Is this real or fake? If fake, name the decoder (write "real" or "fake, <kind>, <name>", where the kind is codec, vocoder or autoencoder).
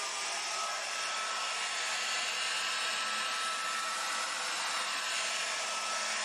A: real